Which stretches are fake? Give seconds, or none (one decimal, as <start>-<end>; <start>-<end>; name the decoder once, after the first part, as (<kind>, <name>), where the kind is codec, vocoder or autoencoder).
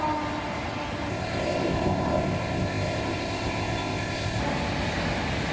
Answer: 1.1-4.4 (codec, ZipCodec)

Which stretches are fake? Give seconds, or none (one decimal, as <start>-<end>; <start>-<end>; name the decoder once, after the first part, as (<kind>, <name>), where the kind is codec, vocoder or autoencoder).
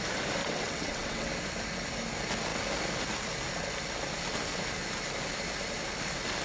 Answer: 0.4-1.3 (vocoder, WaveNeXt)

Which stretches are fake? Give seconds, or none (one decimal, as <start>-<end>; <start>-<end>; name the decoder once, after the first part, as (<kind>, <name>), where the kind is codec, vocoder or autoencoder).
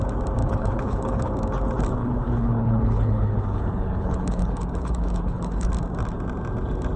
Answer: 0.4-1.3 (codec, HILCodec); 2.0-5.7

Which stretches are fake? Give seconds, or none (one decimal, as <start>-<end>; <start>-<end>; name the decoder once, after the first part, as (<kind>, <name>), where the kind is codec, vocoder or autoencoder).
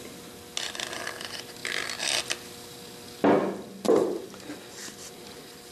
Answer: none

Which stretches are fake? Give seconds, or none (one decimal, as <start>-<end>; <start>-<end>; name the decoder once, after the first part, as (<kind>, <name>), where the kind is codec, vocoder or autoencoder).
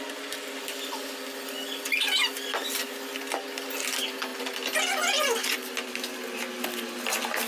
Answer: none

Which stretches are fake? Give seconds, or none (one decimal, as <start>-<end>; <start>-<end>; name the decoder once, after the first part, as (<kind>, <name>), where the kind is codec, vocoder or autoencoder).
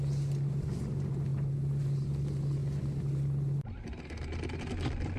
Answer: none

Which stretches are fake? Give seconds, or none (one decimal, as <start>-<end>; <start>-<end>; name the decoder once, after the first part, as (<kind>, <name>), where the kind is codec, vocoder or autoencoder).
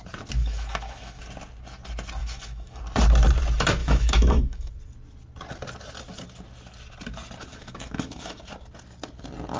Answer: 0.4-1.2 (autoencoder, DAC-VAE); 2.2-2.8; 3.8-4.7; 7.5-8.4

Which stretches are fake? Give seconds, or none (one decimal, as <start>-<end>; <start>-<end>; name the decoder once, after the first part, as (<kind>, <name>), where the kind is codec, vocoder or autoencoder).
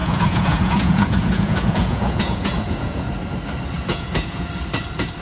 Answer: 0.0-3.1 (vocoder, Vocos); 3.9-4.5